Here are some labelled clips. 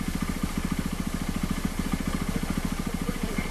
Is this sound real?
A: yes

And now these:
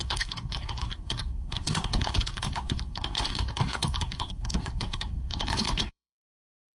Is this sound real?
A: no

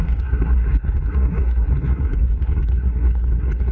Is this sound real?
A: no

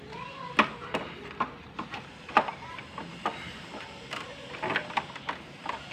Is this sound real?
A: yes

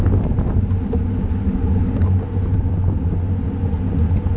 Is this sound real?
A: yes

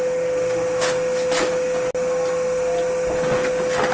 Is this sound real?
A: yes